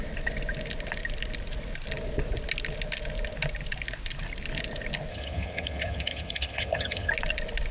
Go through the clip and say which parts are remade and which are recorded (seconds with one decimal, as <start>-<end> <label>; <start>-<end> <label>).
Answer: 0.0-5.1 recorded; 5.1-7.1 remade; 7.1-7.7 recorded